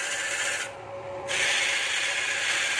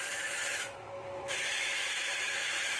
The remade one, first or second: second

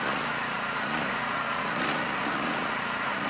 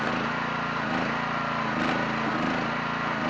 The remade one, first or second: first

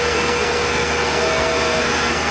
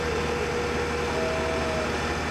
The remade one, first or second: first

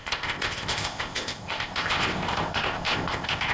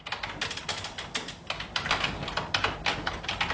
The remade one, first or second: first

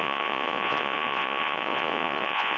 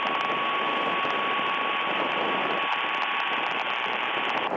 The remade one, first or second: first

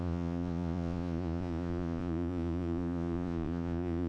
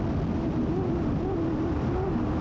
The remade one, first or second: first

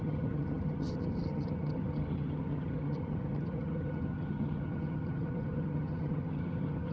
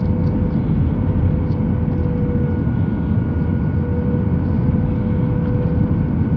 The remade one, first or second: first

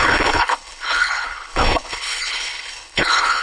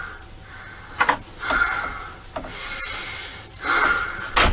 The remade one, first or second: first